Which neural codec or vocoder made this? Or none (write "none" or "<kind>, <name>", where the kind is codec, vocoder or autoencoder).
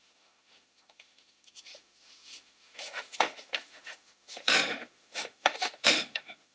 autoencoder, DAC-VAE